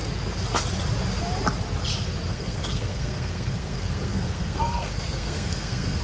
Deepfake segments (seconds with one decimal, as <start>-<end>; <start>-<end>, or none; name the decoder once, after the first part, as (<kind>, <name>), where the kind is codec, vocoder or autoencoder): 2.3-6.0 (codec, SNAC)